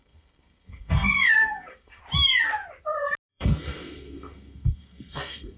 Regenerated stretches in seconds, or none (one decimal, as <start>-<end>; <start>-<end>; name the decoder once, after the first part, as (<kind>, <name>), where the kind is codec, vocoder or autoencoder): 0.0-2.0 (codec, SNAC); 3.3-5.6